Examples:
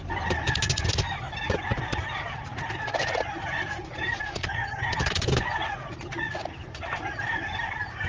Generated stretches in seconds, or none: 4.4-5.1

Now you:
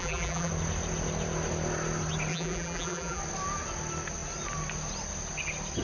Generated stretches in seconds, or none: 0.0-0.5; 2.3-3.2

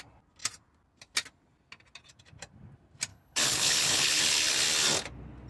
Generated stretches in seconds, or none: 3.1-4.2

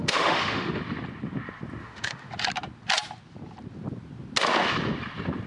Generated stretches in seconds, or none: 0.0-0.8; 1.8-2.3